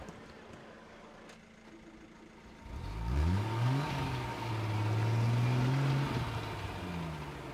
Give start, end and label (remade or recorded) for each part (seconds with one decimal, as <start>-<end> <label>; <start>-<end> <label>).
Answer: 0.0-0.6 recorded; 0.6-1.2 remade; 1.2-3.2 recorded; 3.2-4.5 remade; 4.5-7.5 recorded